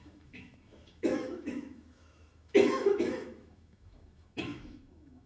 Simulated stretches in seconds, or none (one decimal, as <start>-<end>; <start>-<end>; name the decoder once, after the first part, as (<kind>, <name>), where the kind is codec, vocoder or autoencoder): 0.0-5.3 (autoencoder, DAC-VAE)